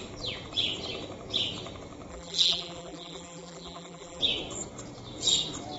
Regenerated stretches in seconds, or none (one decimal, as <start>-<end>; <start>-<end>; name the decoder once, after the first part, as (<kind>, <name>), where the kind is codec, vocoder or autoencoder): 2.1-4.2 (vocoder, BigVGAN v2)